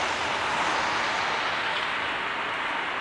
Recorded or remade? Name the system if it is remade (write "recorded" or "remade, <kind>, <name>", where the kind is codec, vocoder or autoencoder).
recorded